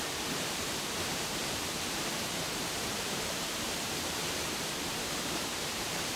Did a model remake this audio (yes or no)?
yes